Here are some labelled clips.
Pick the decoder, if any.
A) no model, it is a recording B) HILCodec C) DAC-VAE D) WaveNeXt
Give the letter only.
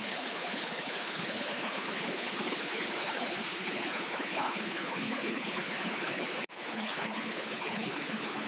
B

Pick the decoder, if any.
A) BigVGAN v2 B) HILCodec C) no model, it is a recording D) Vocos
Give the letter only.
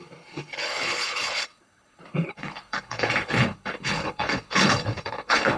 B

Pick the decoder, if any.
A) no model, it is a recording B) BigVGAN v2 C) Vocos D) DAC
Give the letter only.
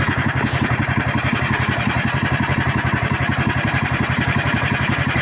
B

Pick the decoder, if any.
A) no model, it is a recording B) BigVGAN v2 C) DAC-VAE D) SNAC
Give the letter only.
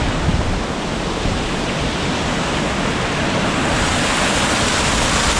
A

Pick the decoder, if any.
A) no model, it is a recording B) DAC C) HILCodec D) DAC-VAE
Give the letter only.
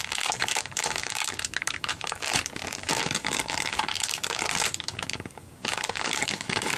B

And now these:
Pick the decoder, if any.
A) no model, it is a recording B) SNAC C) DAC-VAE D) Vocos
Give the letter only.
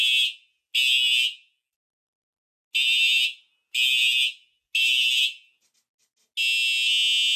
A